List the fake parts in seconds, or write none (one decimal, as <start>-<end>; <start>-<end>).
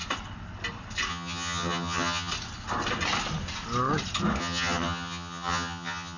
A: 1.1-2.3; 4.4-6.2